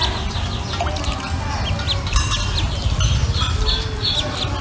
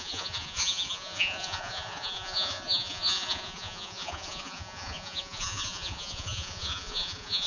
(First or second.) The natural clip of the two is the first